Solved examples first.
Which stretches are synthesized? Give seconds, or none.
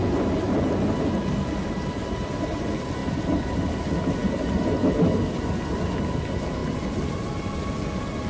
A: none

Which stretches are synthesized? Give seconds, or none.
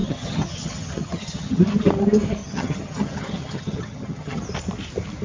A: 0.0-1.6 (vocoder, HiFi-GAN); 2.4-4.4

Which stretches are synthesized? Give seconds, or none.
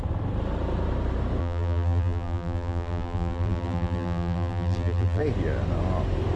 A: 1.4-5.2 (vocoder, BigVGAN v2)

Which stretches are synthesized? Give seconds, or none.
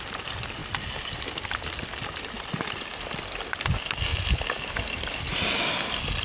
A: none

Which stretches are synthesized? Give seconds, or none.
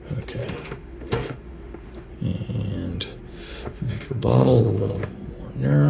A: 0.4-2.1 (autoencoder, DAC-VAE); 3.3-5.1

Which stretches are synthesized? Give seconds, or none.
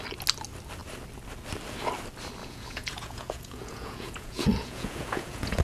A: 2.4-5.6 (vocoder, Vocos)